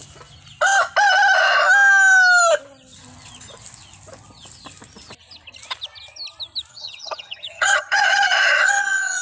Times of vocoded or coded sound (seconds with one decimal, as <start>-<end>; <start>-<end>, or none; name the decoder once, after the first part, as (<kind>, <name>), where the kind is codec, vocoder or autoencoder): 6.7-9.2 (vocoder, HiFi-GAN)